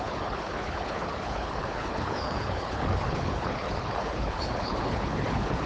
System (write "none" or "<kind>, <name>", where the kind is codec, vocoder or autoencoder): codec, HILCodec